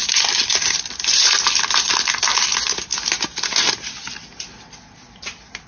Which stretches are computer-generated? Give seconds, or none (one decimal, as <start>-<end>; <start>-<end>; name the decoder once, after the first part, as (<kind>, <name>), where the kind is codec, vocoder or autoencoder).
none